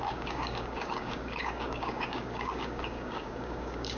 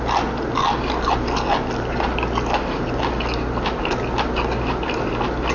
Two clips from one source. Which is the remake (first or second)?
first